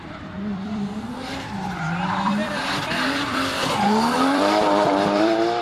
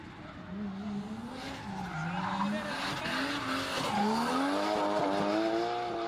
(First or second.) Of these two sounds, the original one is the second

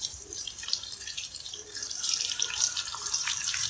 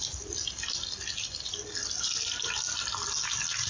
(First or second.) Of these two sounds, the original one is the second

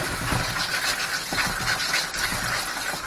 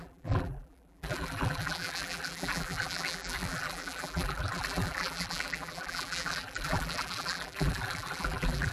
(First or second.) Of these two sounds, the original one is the first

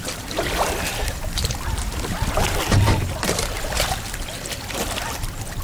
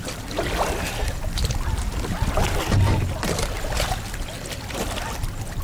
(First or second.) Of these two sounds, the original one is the second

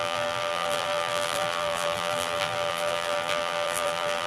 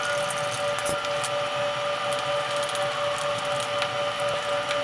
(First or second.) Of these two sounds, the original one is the second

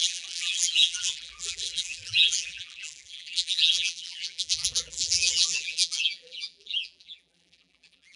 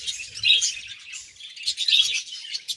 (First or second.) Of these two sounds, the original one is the second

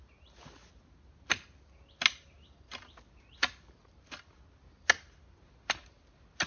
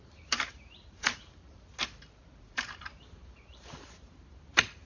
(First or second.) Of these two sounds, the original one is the first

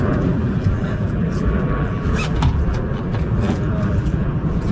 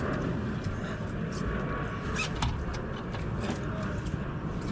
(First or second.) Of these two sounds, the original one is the second